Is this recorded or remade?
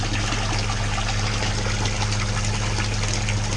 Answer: recorded